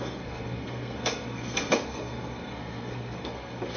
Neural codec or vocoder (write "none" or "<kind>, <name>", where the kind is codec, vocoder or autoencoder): codec, SNAC